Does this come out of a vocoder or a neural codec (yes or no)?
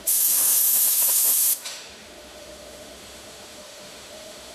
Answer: yes